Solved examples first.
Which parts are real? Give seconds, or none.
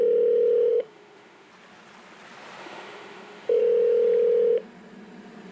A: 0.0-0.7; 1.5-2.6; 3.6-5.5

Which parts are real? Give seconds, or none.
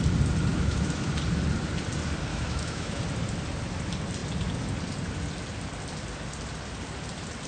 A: 0.0-0.5; 1.1-2.3; 3.0-7.5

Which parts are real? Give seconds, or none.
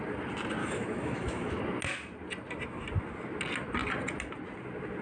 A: 0.0-0.6; 1.6-5.0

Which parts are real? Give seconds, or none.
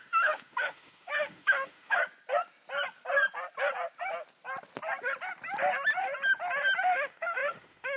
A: 2.0-6.8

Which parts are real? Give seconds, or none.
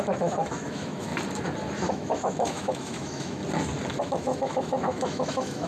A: 1.1-1.9; 3.4-4.0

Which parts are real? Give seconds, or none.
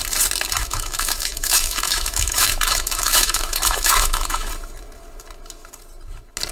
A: 0.0-0.6; 4.5-6.5